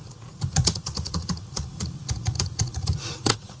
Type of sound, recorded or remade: remade